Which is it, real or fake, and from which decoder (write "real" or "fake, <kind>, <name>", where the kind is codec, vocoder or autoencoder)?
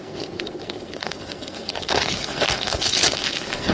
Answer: fake, codec, SNAC